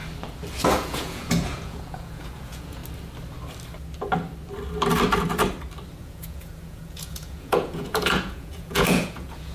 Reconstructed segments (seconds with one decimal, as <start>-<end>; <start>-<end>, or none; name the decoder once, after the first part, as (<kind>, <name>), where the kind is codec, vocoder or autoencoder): 0.7-2.8 (vocoder, Vocos); 6.0-9.5